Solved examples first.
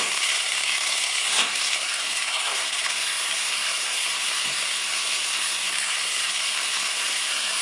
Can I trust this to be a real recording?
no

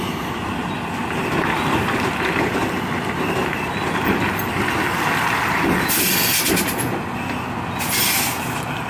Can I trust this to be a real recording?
yes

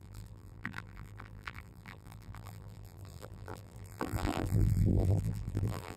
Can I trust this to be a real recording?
no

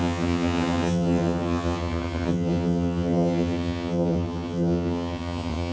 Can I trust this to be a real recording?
no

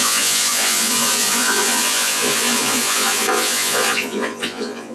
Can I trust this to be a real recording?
no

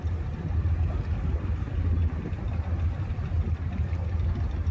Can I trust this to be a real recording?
yes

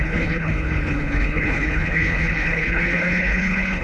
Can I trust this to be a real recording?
no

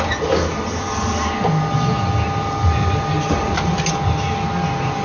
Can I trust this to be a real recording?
yes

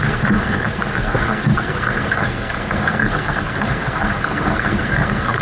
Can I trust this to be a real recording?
no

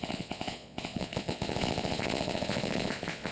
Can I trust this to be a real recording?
no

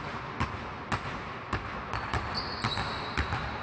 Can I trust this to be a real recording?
yes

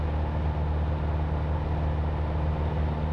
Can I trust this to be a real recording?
yes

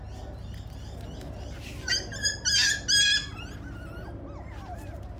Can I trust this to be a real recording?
yes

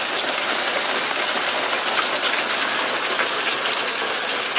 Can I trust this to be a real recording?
yes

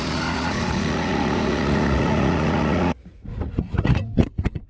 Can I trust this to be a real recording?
no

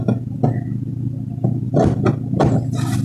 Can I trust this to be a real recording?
yes